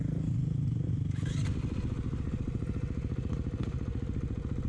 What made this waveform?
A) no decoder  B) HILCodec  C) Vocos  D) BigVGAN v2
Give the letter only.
A